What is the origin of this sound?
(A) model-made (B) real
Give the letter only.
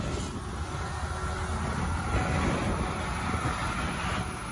B